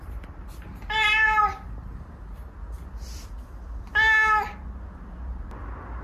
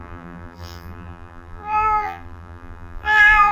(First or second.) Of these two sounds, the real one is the first